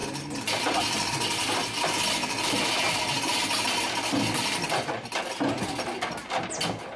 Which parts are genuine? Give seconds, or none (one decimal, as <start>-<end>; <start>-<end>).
0.0-7.0